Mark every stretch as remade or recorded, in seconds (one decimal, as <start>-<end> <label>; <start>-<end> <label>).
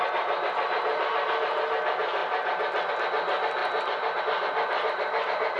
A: 0.0-5.6 recorded